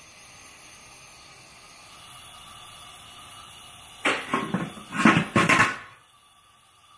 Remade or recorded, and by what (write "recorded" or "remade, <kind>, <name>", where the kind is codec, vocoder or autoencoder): recorded